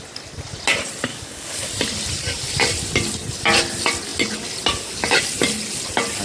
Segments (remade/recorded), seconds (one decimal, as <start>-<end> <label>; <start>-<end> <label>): 0.0-1.1 recorded; 1.1-1.7 remade; 1.7-6.2 recorded